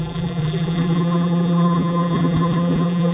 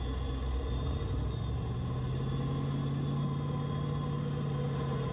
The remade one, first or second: first